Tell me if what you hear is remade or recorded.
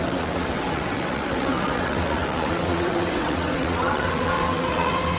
remade